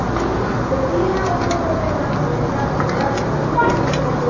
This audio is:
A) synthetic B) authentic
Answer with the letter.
B